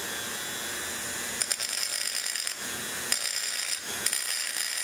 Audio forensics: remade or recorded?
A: recorded